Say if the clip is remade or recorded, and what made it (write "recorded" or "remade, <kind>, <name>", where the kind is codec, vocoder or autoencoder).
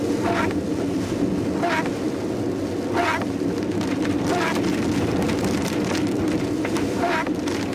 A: recorded